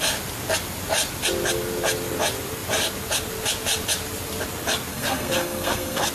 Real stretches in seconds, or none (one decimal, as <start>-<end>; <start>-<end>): 0.0-4.9